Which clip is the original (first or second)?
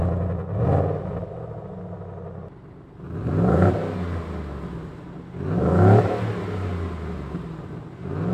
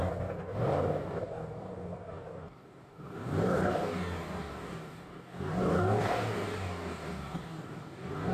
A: first